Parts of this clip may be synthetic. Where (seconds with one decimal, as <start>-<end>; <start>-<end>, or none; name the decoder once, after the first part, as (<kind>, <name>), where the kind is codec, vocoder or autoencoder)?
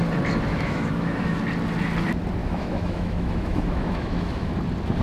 0.5-1.4 (autoencoder, DAC-VAE); 2.4-4.5